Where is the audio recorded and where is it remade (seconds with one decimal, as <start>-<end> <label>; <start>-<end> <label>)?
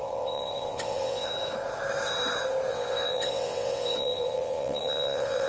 0.0-1.3 remade; 1.3-2.7 recorded; 2.7-5.5 remade